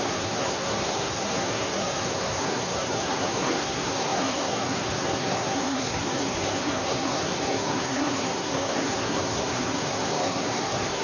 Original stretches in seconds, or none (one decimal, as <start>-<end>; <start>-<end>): none

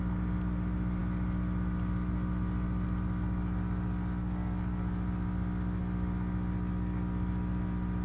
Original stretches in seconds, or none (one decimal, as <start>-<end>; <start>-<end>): 0.0-8.0

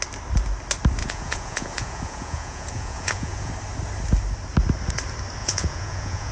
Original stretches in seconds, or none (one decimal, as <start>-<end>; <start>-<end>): 0.0-1.0; 3.5-5.4

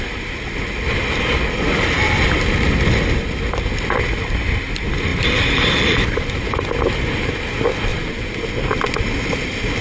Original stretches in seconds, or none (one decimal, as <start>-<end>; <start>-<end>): 0.0-5.1; 6.3-7.9; 8.4-9.8

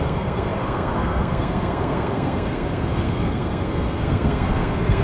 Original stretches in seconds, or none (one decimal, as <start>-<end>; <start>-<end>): none

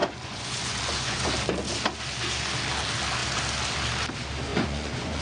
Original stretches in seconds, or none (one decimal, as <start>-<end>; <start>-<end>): 1.3-4.5